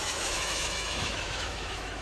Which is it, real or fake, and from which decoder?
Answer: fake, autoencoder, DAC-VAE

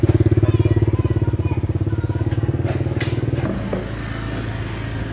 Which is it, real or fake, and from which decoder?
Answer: real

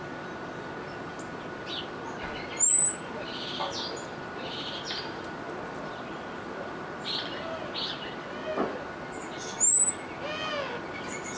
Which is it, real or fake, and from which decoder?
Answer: real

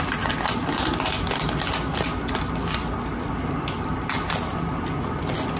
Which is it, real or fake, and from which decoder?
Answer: real